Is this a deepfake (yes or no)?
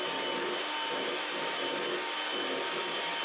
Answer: no